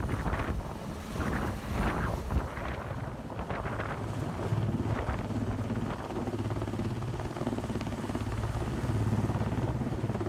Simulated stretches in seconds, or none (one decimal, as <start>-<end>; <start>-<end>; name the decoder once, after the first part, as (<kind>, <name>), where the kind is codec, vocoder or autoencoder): none